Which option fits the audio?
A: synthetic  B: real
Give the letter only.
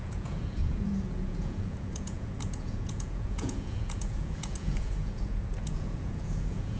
A